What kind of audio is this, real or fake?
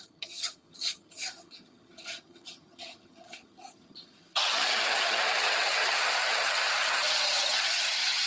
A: fake